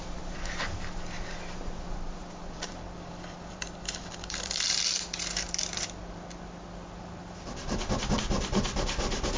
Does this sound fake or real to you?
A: fake